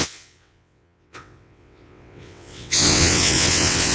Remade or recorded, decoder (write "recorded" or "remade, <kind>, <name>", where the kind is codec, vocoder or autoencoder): remade, vocoder, WaveNeXt